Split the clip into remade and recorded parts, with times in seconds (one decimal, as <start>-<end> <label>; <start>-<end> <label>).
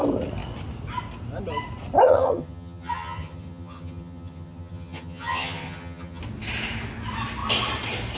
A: 0.0-2.1 recorded; 2.1-6.2 remade; 6.2-8.2 recorded